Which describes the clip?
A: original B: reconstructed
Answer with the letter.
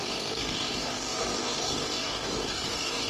B